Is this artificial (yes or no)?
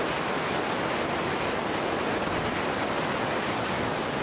no